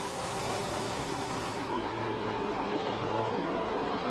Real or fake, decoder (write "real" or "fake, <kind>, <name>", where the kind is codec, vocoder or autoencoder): fake, codec, SNAC